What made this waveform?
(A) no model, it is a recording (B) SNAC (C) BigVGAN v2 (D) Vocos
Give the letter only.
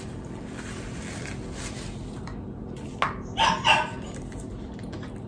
A